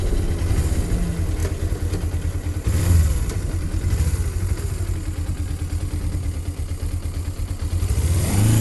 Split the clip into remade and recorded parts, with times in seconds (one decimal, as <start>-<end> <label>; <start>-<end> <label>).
0.0-8.6 recorded